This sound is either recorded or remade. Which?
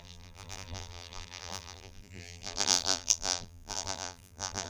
remade